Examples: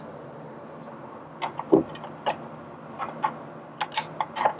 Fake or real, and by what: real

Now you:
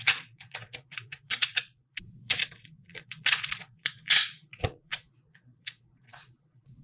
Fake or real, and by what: fake, vocoder, Vocos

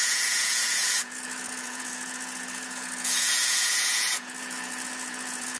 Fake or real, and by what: fake, vocoder, Vocos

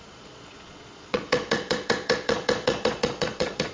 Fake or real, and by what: fake, vocoder, Vocos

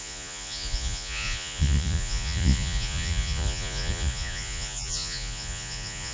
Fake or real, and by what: fake, vocoder, Vocos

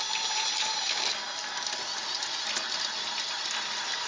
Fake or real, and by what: real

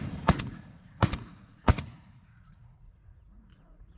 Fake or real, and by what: fake, vocoder, Vocos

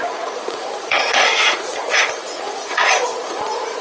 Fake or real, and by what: fake, vocoder, Vocos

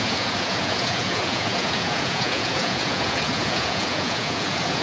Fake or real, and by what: fake, vocoder, Vocos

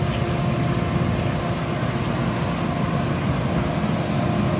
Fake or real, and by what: real